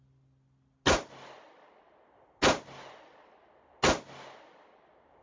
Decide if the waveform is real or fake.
real